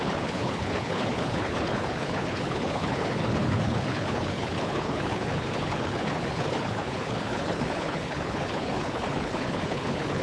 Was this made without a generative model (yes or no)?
no